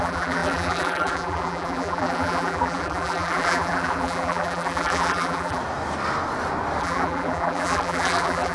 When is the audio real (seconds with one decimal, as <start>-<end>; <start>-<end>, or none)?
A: 5.6-6.8